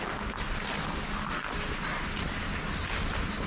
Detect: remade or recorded recorded